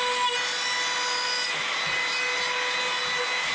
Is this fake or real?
real